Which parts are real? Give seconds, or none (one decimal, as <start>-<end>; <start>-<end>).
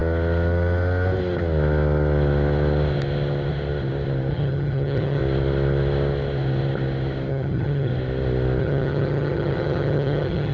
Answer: 0.0-4.3; 5.2-7.3; 7.9-8.6